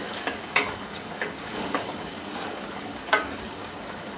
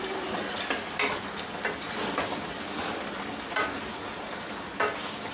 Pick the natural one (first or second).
second